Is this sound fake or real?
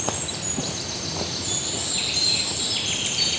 real